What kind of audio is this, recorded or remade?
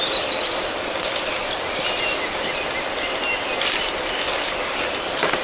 recorded